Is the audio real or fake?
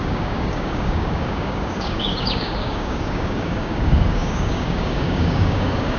fake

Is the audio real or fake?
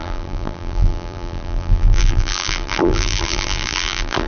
fake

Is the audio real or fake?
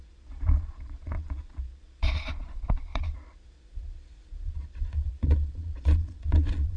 fake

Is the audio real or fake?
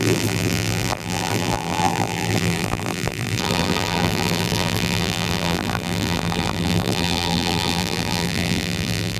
fake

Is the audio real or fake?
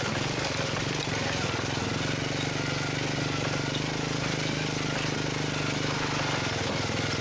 real